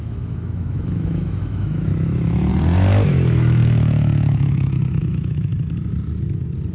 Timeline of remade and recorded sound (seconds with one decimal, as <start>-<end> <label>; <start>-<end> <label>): 0.0-2.5 remade; 2.5-3.1 recorded; 3.1-5.5 remade; 5.5-6.7 recorded